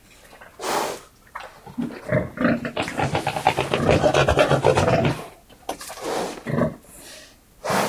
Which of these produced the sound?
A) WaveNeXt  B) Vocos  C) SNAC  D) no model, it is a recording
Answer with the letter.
D